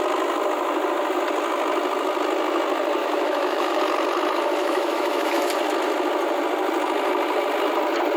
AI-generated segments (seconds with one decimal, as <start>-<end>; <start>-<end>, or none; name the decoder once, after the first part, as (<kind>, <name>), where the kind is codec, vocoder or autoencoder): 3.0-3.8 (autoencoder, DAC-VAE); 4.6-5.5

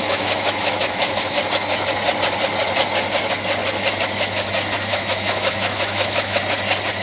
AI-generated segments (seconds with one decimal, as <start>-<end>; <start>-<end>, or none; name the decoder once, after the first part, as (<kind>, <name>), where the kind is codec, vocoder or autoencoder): 0.0-1.4 (autoencoder, DAC-VAE); 4.9-6.4

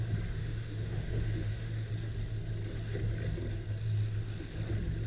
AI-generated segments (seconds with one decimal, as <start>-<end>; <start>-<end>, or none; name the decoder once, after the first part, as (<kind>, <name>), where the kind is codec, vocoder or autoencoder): 0.4-1.9 (autoencoder, DAC-VAE)

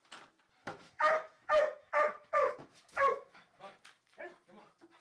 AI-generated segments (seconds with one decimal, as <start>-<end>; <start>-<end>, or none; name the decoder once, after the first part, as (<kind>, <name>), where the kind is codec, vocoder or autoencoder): 0.6-3.6 (autoencoder, DAC-VAE)